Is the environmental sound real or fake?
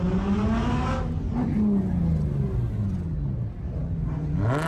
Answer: real